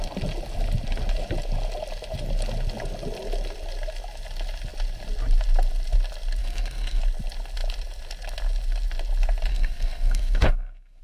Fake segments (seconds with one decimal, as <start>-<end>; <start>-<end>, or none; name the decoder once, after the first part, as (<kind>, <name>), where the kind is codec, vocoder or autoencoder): 6.4-7.0 (codec, SNAC); 9.5-11.0